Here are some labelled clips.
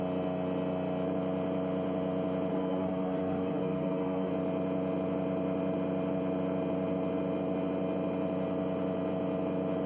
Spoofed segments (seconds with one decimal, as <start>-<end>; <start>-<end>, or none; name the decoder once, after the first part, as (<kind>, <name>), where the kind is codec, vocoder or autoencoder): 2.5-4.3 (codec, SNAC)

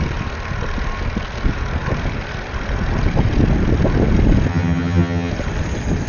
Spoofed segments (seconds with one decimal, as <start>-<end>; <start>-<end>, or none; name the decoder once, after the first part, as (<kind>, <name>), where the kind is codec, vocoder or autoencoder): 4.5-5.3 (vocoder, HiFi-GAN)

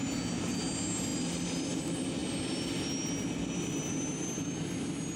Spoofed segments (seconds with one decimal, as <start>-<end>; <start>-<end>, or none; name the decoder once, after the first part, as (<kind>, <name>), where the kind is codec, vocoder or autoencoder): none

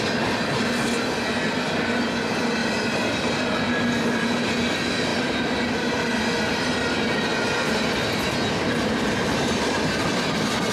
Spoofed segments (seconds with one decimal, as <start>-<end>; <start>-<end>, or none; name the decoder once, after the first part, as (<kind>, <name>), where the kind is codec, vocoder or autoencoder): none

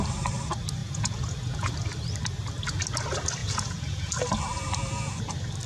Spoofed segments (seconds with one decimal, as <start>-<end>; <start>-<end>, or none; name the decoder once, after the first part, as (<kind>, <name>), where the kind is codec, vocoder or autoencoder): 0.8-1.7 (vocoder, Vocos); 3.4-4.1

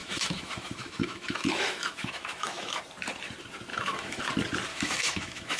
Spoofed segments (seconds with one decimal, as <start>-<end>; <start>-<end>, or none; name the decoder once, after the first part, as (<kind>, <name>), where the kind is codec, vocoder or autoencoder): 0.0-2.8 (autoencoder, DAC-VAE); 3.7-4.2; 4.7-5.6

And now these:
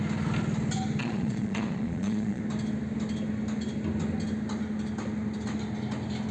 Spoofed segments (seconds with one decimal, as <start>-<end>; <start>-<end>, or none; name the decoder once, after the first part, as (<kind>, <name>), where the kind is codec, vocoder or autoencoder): 1.0-2.4 (vocoder, Vocos)

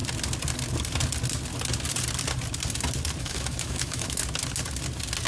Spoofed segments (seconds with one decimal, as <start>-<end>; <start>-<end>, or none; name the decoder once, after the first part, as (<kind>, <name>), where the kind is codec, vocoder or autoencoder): 3.2-4.2 (autoencoder, DAC-VAE)